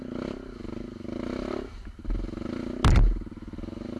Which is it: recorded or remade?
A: recorded